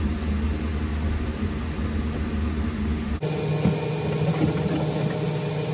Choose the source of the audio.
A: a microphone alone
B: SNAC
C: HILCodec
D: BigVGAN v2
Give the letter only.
A